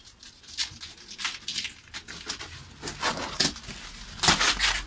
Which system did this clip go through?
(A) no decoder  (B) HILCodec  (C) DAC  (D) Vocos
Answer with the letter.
A